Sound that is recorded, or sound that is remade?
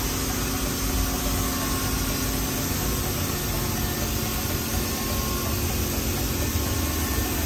recorded